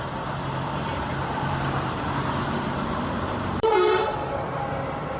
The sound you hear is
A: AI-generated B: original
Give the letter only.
A